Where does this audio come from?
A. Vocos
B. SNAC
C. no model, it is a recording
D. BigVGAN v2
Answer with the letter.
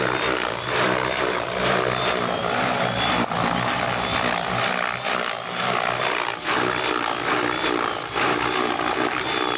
C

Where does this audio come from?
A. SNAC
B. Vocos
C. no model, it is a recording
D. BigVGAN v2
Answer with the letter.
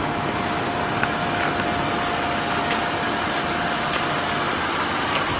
C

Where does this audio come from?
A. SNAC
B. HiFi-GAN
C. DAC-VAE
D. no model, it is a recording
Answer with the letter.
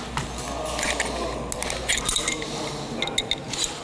D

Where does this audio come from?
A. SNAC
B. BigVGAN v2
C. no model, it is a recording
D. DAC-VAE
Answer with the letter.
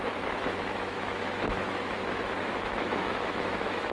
D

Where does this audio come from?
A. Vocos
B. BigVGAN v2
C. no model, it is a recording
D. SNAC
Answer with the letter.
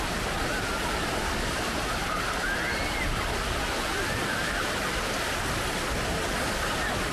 C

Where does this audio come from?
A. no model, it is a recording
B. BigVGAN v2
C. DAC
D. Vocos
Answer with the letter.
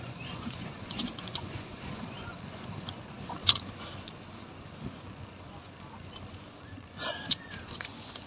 D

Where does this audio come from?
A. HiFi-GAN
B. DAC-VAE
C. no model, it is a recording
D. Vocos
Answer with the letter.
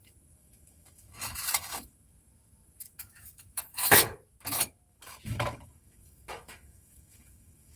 B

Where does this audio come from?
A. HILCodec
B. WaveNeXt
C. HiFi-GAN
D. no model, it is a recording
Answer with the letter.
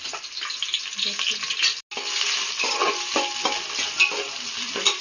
D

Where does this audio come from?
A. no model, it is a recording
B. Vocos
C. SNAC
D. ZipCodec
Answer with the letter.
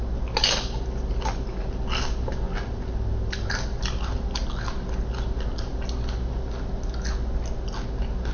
A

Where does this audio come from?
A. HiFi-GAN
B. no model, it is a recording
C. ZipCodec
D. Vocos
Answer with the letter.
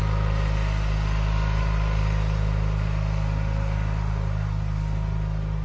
B